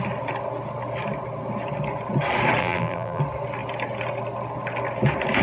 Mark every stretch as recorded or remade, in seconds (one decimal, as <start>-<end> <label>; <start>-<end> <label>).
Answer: 0.0-2.6 recorded; 2.6-3.2 remade; 3.2-5.4 recorded